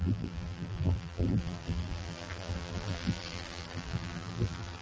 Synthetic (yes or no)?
yes